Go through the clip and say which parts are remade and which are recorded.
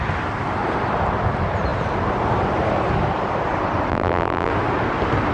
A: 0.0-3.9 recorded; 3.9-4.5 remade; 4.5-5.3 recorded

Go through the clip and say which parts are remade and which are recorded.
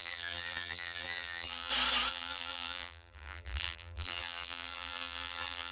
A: 0.0-1.7 remade; 1.7-2.1 recorded; 2.1-5.7 remade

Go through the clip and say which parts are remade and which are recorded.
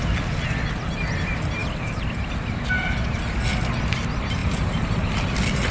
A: 0.0-4.4 recorded; 4.4-5.1 remade; 5.1-5.7 recorded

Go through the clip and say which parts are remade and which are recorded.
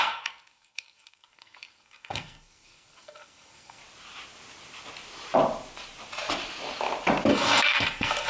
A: 0.0-3.8 remade; 3.8-7.3 recorded; 7.3-8.3 remade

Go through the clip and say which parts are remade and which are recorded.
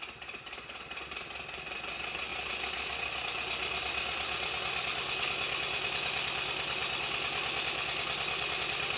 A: 0.0-9.0 recorded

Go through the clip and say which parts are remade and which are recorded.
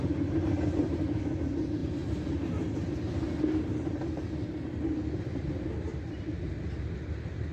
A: 0.0-7.5 recorded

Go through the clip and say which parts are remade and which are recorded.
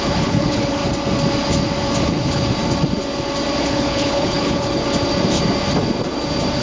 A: 0.0-0.8 remade; 0.8-2.0 recorded; 2.0-2.5 remade; 2.5-3.6 recorded; 3.6-4.8 remade; 4.8-6.6 recorded